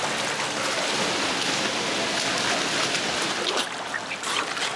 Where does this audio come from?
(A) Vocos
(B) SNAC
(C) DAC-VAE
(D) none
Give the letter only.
D